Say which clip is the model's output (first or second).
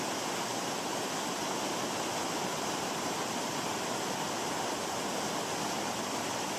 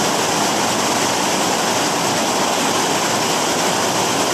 second